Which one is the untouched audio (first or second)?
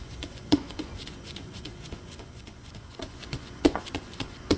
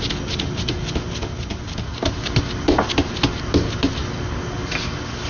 second